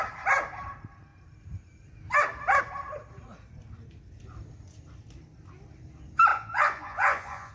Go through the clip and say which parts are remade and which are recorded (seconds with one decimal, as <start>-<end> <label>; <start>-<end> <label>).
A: 0.0-6.3 recorded; 6.3-7.5 remade